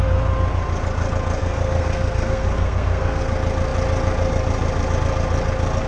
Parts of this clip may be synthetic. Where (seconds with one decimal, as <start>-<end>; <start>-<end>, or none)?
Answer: 1.4-3.2